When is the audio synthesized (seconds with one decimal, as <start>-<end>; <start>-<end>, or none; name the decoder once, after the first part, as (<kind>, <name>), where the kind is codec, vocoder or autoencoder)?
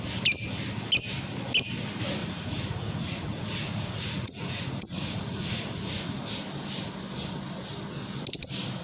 2.2-6.2 (vocoder, Vocos)